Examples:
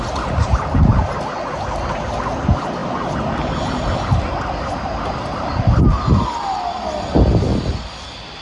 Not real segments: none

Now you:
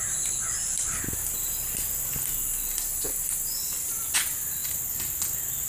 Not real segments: none

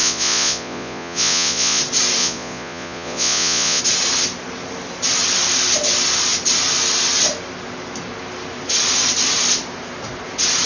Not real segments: 0.0-1.8 (vocoder, Vocos); 2.2-3.8

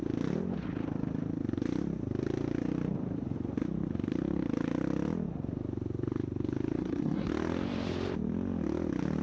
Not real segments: 6.8-7.3 (codec, SNAC)